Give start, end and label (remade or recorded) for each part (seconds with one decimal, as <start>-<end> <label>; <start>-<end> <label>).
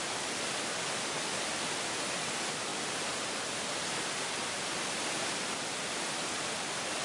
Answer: 0.0-7.0 recorded